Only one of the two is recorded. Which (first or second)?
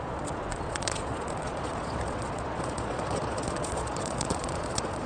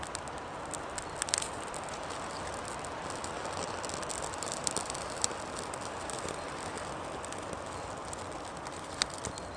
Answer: second